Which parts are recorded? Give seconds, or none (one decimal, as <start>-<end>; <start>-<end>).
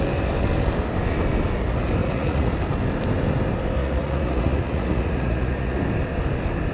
0.0-2.0; 2.5-3.8; 5.8-6.7